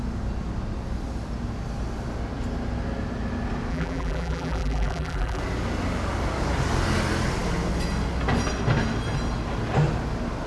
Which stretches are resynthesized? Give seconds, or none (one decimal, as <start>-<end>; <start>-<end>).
3.7-5.4